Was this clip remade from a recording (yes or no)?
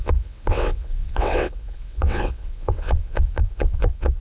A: yes